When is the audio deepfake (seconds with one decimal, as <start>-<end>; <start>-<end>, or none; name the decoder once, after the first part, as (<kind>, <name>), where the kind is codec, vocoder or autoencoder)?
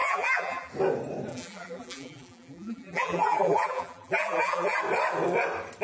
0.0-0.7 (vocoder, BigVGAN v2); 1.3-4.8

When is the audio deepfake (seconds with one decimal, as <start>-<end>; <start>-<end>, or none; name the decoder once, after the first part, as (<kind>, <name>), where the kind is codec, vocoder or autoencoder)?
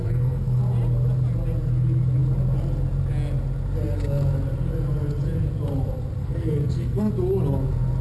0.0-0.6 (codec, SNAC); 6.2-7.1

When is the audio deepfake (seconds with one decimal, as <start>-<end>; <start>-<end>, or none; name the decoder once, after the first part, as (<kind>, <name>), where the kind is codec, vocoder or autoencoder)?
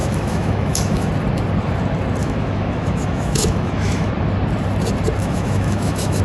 0.0-1.1 (autoencoder, DAC-VAE); 2.2-4.1; 5.2-6.2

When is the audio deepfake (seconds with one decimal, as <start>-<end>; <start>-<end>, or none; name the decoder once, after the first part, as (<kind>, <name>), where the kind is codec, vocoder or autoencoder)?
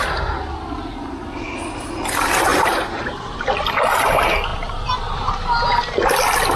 2.5-3.0 (vocoder, BigVGAN v2); 4.5-5.3